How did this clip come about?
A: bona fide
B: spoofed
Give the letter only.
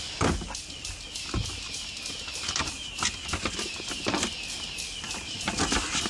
A